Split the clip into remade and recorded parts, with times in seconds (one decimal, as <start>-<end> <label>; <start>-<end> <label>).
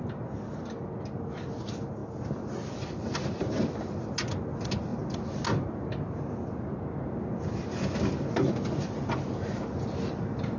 0.0-10.6 recorded